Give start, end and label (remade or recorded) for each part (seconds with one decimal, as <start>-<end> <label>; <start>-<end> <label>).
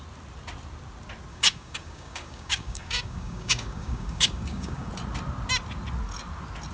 0.0-1.3 recorded; 1.3-4.9 remade; 4.9-6.7 recorded